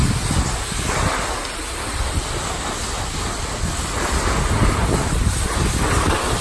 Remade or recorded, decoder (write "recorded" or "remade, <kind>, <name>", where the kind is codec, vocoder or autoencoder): recorded